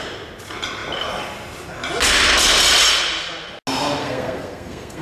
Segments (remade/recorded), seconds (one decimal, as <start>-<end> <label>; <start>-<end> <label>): 0.0-4.0 recorded; 4.0-5.0 remade